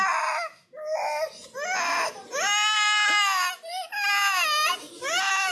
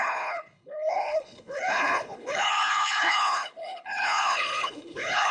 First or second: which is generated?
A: second